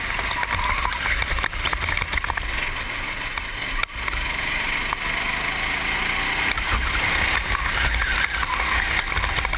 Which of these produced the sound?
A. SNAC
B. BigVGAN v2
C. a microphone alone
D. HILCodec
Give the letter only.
C